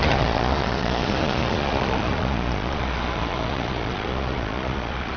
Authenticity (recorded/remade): remade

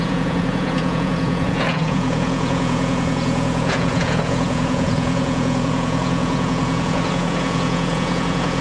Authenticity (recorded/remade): remade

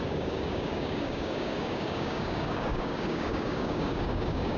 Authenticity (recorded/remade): remade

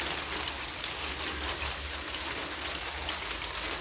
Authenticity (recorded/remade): recorded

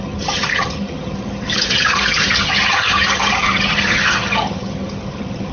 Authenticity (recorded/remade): remade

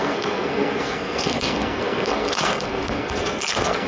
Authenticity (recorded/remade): remade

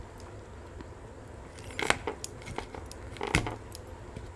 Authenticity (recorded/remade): recorded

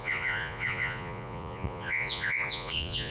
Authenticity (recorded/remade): remade